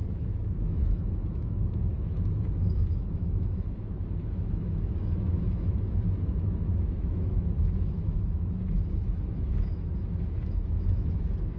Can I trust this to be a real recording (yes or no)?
no